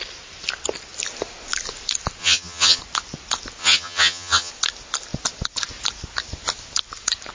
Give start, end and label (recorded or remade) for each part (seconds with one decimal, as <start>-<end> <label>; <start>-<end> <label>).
0.0-2.2 recorded; 2.2-2.8 remade; 2.8-3.6 recorded; 3.6-4.5 remade; 4.5-7.3 recorded